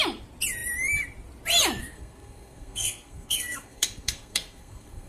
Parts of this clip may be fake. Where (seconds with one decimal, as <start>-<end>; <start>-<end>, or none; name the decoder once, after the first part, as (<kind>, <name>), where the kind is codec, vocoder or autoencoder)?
1.8-5.1 (codec, SNAC)